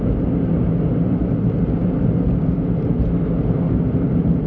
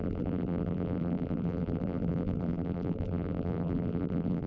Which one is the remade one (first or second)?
second